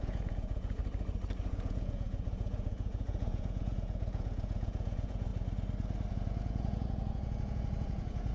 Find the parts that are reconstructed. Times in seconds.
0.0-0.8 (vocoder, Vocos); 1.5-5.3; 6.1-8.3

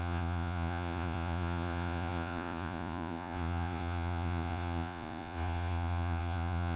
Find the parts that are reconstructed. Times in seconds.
0.0-6.8 (vocoder, Vocos)

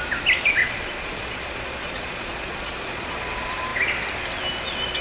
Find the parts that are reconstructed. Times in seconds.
0.6-3.1 (vocoder, Vocos)

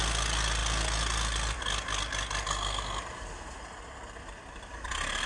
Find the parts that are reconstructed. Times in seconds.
none